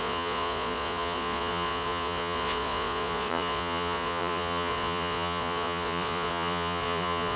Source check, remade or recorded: remade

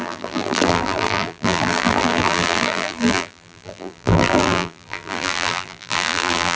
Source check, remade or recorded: remade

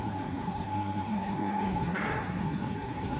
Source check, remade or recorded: remade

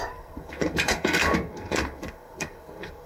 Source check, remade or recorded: remade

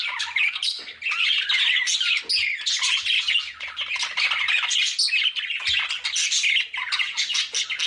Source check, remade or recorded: recorded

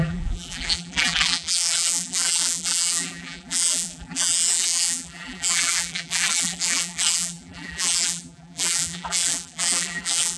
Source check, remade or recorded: remade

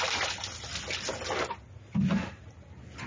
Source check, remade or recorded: recorded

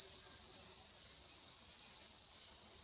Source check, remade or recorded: recorded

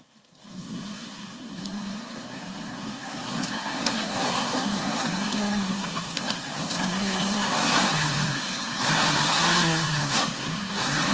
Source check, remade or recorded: remade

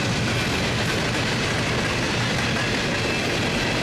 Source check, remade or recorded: recorded